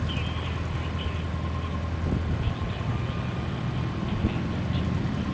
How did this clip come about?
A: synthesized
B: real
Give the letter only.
B